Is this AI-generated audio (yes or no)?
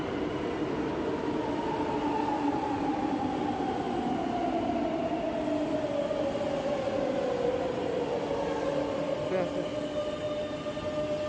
no